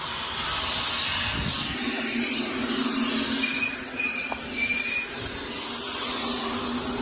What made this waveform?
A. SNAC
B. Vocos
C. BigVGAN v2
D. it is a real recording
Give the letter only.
D